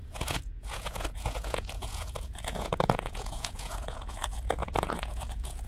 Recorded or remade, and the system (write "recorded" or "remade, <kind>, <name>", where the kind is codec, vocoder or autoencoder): remade, vocoder, Vocos